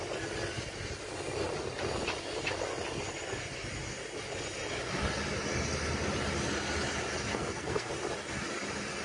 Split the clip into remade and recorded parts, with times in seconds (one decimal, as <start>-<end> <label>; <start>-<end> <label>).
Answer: 0.0-7.3 recorded; 7.3-7.9 remade; 7.9-9.0 recorded